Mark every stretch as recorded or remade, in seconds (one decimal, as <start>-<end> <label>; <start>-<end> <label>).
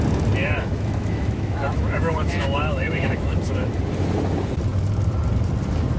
0.0-0.4 recorded; 0.4-3.8 remade; 3.8-6.0 recorded